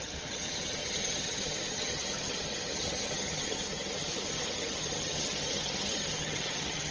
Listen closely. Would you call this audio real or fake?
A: fake